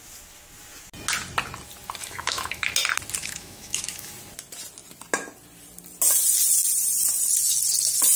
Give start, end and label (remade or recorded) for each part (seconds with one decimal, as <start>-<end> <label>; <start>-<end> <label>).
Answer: 0.0-2.0 recorded; 2.0-2.7 remade; 2.7-3.2 recorded; 3.2-4.1 remade; 4.1-8.2 recorded